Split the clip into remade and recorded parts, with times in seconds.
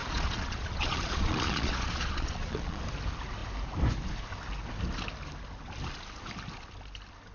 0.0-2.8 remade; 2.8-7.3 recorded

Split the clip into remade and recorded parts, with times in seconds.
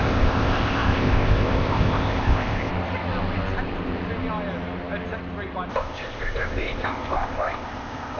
0.0-2.7 remade; 2.7-5.7 recorded; 5.7-8.2 remade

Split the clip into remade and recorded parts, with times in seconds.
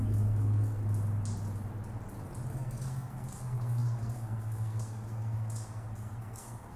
0.0-0.8 remade; 0.8-2.5 recorded; 2.5-6.8 remade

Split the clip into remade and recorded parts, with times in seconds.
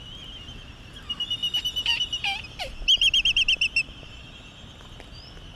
0.0-5.6 recorded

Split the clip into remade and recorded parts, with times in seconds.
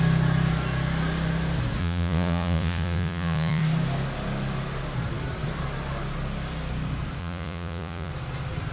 0.0-1.8 recorded; 1.8-3.6 remade; 3.6-7.2 recorded; 7.2-8.1 remade; 8.1-8.7 recorded